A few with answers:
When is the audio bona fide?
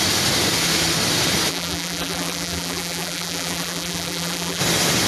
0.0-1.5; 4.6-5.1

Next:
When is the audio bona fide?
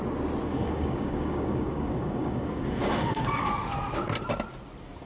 0.0-0.5; 3.5-5.0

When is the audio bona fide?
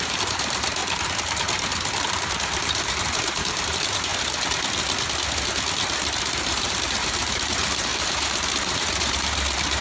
0.8-2.0; 4.1-6.3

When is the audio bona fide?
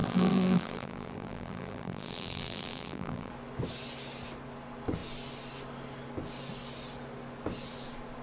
3.3-8.2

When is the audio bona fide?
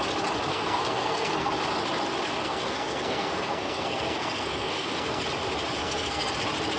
0.0-0.5; 1.5-2.4; 5.2-5.8; 6.3-6.8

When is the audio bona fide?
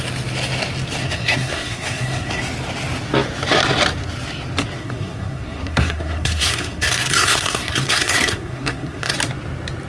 0.0-1.0; 2.4-4.8; 9.1-9.9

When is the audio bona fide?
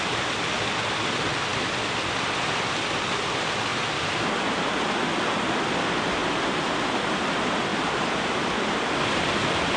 0.0-1.5; 2.1-6.2; 6.9-7.7; 9.4-9.8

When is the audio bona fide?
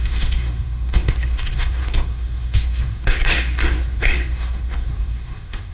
none